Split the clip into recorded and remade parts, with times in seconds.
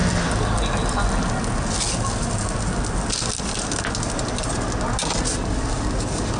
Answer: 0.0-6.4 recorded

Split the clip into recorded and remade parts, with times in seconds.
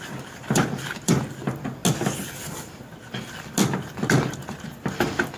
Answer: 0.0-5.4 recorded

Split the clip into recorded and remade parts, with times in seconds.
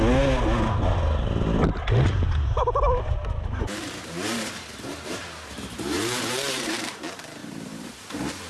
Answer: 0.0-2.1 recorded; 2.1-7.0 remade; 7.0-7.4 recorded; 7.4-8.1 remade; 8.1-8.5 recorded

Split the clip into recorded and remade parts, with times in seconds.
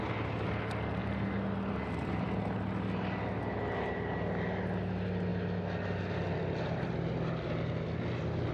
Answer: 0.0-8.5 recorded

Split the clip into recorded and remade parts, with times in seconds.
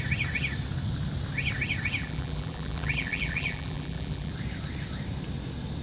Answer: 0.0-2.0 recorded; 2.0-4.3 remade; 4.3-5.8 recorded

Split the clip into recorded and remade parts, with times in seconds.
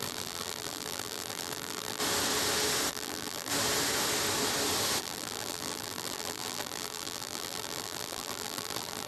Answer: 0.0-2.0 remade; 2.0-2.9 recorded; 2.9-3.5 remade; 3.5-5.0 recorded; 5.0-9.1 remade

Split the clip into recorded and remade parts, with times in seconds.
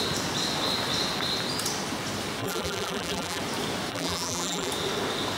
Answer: 0.0-2.4 recorded; 2.4-3.4 remade; 3.4-3.9 recorded; 3.9-4.7 remade; 4.7-5.4 recorded